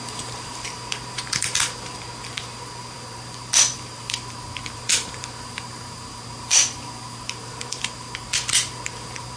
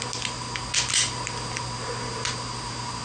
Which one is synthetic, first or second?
first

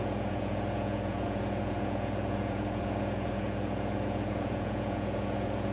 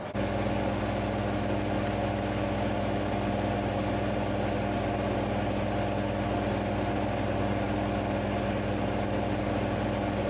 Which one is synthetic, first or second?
first